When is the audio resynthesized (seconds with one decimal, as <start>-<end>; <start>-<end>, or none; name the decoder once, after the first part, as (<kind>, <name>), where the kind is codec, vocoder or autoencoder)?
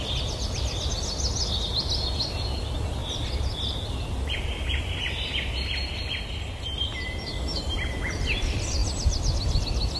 none